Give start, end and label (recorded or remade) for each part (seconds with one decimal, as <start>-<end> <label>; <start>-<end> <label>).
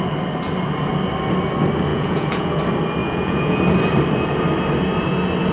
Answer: 0.0-1.9 recorded; 1.9-2.6 remade; 2.6-3.0 recorded; 3.0-3.6 remade; 3.6-5.5 recorded